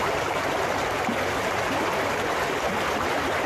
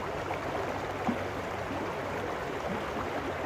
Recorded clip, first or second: second